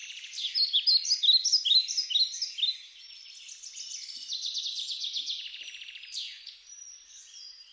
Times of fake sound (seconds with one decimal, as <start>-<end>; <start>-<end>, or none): none